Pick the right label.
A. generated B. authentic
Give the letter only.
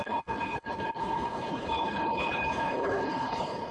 A